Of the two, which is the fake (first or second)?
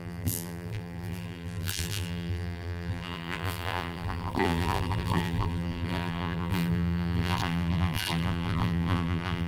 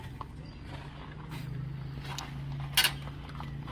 first